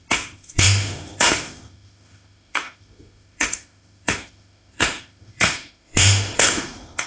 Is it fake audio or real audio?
fake